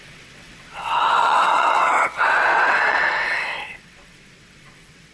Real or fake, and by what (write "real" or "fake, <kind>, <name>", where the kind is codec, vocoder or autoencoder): fake, vocoder, WaveNeXt